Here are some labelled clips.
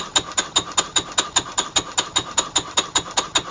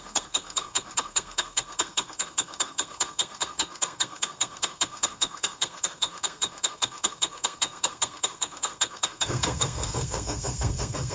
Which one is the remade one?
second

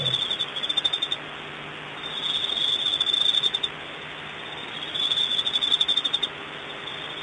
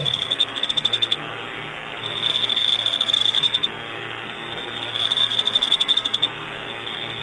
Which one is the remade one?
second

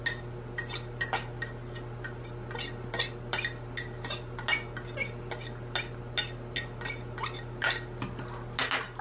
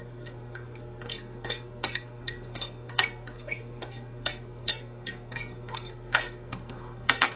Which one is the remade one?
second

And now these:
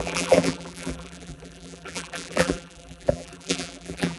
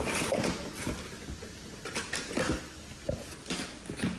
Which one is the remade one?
first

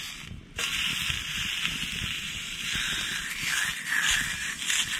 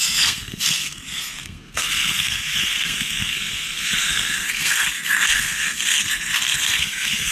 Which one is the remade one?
second